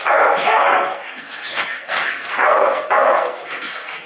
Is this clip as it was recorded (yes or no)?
no